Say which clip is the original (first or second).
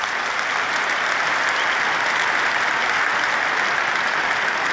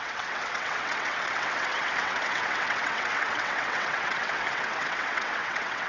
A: first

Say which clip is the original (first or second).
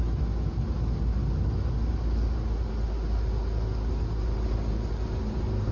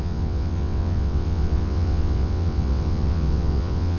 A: first